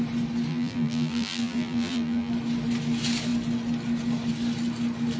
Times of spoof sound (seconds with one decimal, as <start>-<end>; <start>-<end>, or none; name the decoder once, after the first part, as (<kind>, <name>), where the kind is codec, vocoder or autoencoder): 0.5-2.3 (vocoder, BigVGAN v2)